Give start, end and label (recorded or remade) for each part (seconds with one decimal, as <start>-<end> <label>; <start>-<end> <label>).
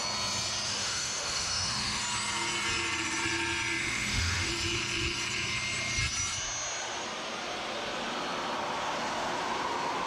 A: 0.0-0.7 recorded; 0.7-2.0 remade; 2.0-3.8 recorded; 3.8-4.5 remade; 4.5-10.1 recorded